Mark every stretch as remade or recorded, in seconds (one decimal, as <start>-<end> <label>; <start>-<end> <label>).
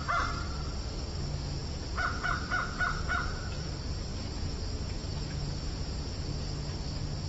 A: 0.0-1.6 recorded; 1.6-2.8 remade; 2.8-4.1 recorded; 4.1-4.6 remade; 4.6-5.1 recorded; 5.1-6.2 remade; 6.2-7.3 recorded